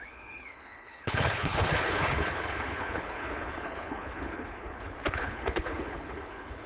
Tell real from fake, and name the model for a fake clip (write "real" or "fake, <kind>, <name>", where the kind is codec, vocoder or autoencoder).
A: fake, codec, HILCodec